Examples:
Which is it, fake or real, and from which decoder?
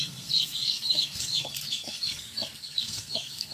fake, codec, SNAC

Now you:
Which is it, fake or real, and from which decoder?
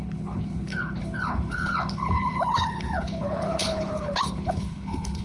fake, codec, HILCodec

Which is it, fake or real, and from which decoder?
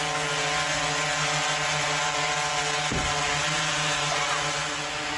real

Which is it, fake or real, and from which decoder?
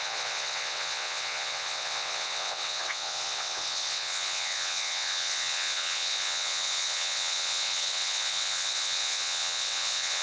fake, vocoder, WaveNeXt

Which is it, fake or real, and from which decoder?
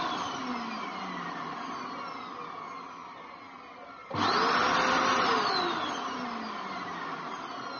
real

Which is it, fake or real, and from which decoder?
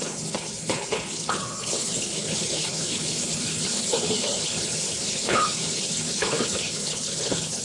fake, codec, HILCodec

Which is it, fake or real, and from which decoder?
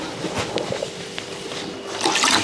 real